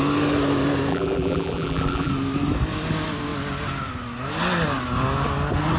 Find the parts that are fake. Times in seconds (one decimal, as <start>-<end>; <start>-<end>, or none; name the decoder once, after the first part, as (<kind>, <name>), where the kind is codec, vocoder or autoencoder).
0.9-2.1 (vocoder, BigVGAN v2)